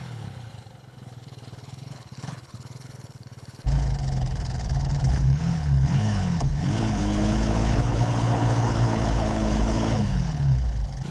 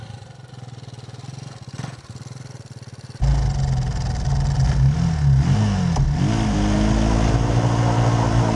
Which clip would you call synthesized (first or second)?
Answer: first